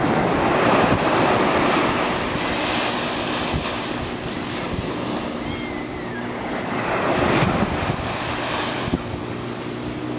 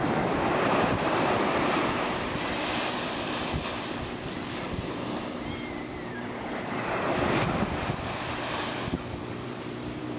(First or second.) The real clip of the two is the first